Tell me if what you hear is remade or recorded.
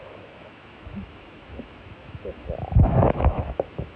remade